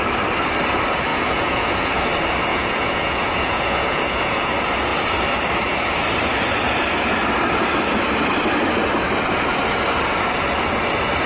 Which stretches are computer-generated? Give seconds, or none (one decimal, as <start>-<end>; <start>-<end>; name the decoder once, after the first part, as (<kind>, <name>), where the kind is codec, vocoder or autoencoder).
1.1-1.9 (vocoder, Vocos); 2.5-4.5

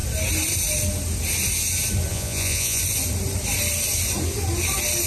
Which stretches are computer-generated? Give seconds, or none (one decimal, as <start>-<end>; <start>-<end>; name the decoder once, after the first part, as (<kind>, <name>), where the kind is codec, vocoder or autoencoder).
2.1-2.8 (vocoder, Vocos)

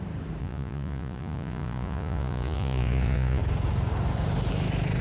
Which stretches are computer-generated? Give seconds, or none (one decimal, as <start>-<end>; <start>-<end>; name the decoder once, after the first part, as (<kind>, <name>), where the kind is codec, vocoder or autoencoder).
0.4-3.4 (vocoder, Vocos)

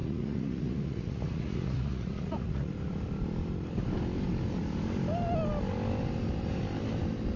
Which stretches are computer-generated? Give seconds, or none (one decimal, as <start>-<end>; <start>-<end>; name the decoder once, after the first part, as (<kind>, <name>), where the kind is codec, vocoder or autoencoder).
0.0-2.7 (vocoder, Vocos)